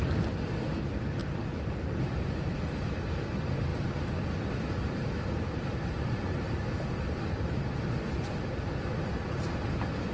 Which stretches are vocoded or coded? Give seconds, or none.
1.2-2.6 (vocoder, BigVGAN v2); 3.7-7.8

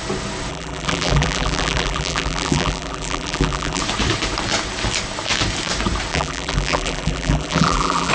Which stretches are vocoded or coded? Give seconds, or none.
0.5-3.8 (vocoder, BigVGAN v2); 6.1-8.1

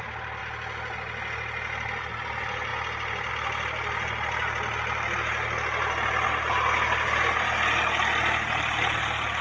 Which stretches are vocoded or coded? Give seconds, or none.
none

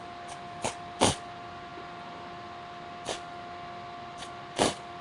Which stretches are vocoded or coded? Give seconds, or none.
none

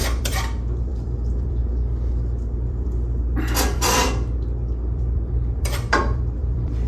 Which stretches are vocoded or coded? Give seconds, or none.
0.0-6.9 (vocoder, BigVGAN v2)